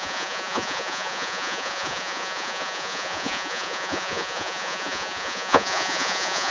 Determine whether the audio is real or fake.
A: fake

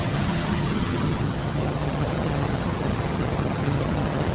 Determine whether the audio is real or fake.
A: fake